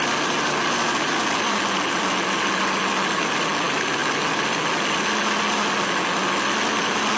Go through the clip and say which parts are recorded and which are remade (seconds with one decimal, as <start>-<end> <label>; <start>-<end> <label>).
0.0-4.0 recorded; 4.0-5.0 remade; 5.0-7.2 recorded